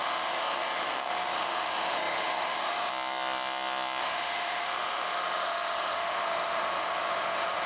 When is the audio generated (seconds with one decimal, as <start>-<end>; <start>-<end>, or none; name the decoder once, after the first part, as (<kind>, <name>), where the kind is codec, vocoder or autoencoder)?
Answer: 0.0-2.9 (autoencoder, DAC-VAE); 4.0-7.7